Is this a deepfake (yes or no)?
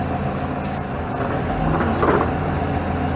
no